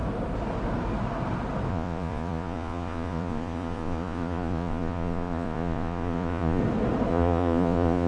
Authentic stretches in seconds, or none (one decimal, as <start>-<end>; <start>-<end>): 0.0-1.7; 6.6-7.1